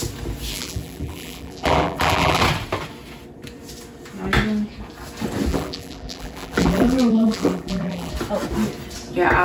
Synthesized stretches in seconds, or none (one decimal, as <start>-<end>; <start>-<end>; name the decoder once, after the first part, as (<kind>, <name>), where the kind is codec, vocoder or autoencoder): 0.5-2.4 (vocoder, BigVGAN v2); 5.5-8.1